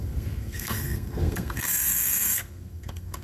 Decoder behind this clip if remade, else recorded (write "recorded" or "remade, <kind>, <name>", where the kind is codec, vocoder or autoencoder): remade, codec, SNAC